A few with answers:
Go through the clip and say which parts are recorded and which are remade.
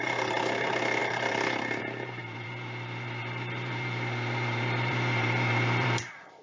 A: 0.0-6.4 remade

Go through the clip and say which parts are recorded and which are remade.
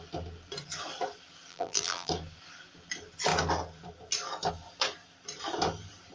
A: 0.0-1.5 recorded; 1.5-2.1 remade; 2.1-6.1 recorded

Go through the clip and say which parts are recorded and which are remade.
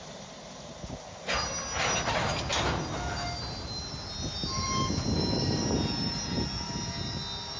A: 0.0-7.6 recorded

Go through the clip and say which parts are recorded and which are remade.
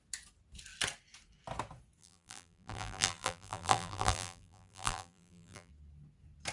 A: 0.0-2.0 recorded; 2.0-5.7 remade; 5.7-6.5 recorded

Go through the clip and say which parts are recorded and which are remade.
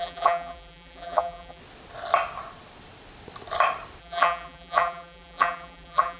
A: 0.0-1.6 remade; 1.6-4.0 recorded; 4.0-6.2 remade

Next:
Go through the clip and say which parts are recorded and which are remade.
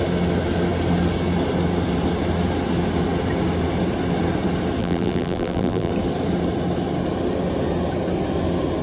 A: 0.0-4.8 recorded; 4.8-5.9 remade; 5.9-8.8 recorded